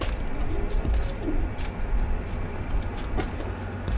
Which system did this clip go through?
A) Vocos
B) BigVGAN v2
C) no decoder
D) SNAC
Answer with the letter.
C